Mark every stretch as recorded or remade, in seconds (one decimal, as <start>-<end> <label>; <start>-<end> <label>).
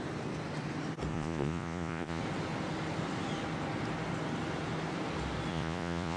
0.0-1.1 recorded; 1.1-2.2 remade; 2.2-5.5 recorded; 5.5-6.2 remade